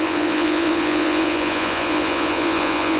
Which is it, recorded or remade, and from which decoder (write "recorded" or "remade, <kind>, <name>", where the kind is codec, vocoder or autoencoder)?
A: remade, vocoder, Vocos